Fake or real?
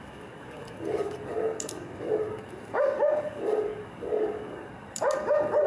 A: fake